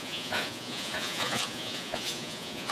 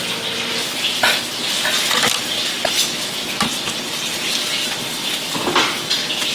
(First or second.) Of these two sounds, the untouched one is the second